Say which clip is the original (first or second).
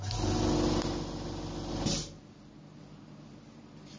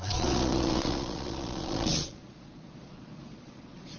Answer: first